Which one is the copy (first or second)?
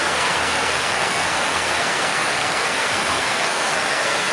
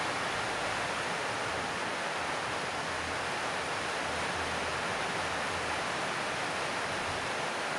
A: first